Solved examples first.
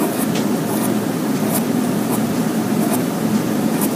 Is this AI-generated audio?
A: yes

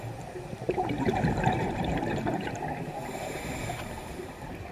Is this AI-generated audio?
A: yes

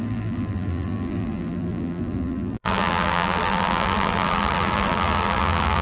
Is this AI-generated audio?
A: yes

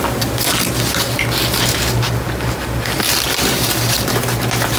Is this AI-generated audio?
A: no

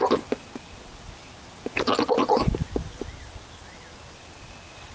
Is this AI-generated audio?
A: no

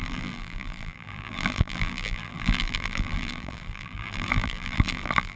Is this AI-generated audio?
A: yes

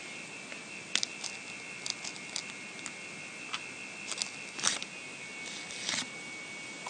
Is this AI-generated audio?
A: no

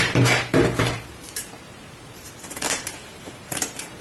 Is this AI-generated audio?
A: yes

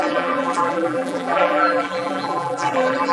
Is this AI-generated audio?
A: yes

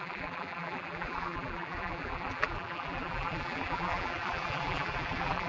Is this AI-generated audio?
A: yes